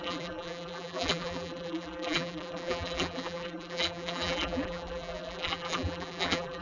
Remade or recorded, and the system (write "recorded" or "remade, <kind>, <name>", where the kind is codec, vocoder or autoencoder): remade, vocoder, BigVGAN v2